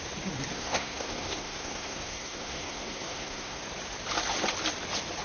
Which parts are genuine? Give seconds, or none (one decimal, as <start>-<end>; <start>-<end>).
0.0-0.5; 3.6-5.2